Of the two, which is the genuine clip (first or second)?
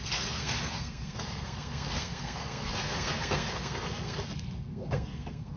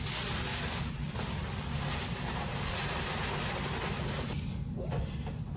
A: second